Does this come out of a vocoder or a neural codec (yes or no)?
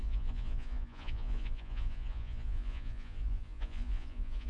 yes